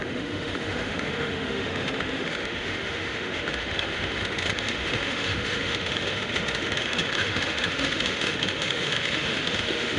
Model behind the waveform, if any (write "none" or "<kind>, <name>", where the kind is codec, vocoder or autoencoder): autoencoder, DAC-VAE